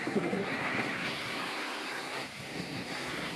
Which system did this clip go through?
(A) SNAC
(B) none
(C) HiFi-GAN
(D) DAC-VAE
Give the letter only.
A